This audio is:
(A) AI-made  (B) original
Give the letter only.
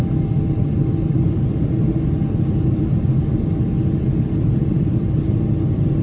B